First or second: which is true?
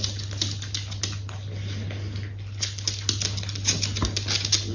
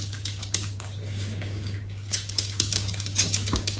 first